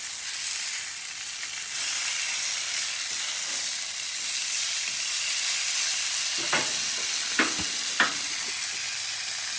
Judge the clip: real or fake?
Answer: real